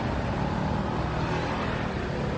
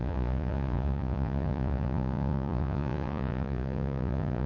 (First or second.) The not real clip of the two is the second